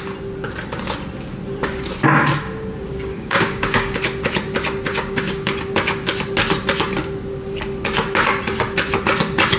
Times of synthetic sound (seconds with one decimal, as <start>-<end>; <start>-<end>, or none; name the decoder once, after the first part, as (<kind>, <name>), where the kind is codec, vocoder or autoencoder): 2.9-4.0 (codec, DAC); 4.9-5.5